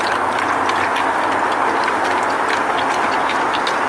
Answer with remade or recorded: recorded